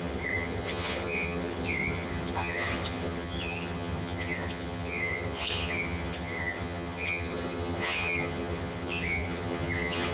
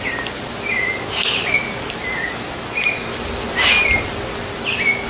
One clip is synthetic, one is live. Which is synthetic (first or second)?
first